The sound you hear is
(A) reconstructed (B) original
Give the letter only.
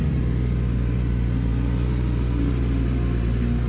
B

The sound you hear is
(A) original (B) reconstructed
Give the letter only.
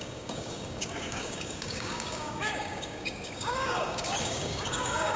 B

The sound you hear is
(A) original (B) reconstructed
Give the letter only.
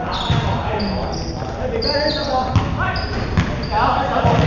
A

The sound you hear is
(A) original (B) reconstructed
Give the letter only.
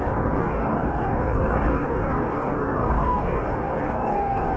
B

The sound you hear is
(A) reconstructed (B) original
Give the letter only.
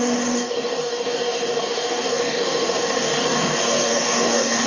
A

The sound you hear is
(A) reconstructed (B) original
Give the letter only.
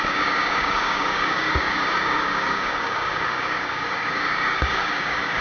A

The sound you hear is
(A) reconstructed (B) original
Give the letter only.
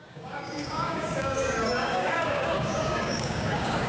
A